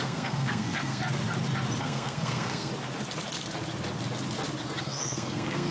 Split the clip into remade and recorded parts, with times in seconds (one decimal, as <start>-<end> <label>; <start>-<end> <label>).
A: 0.0-1.0 remade; 1.0-1.8 recorded; 1.8-2.7 remade; 2.7-4.8 recorded; 4.8-5.7 remade